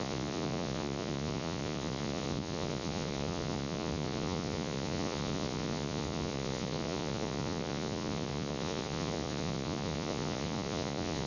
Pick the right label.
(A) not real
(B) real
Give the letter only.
A